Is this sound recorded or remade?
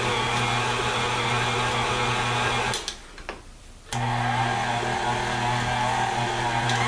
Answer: recorded